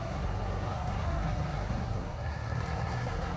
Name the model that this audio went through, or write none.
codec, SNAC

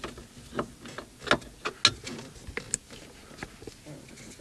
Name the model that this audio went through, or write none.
none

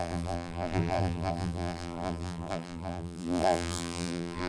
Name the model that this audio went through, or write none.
vocoder, BigVGAN v2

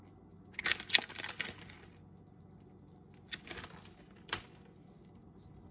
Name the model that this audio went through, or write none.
none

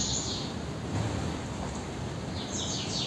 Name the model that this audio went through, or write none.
none